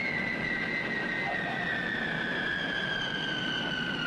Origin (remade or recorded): remade